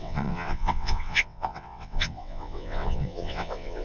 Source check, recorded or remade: remade